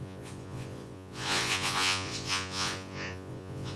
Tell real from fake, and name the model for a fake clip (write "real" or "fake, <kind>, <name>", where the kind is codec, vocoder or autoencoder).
fake, vocoder, Vocos